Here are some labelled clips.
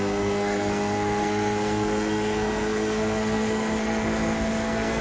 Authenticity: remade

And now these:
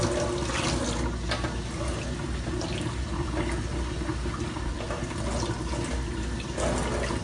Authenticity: recorded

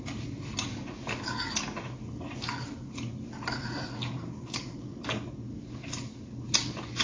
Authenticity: recorded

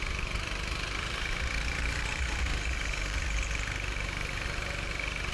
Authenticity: remade